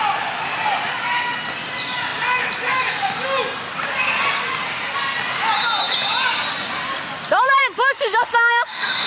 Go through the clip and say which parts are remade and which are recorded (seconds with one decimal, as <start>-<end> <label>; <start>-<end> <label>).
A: 0.0-7.6 recorded; 7.6-9.1 remade